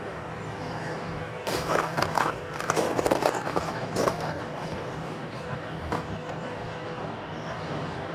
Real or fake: fake